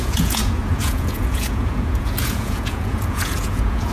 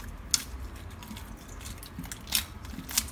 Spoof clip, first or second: first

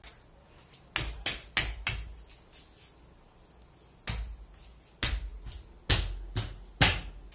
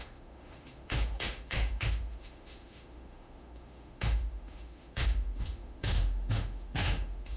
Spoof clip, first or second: second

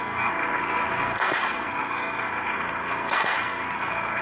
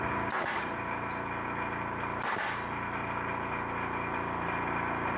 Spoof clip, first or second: first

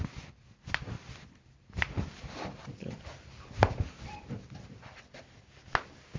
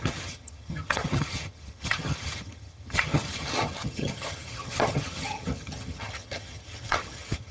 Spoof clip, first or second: second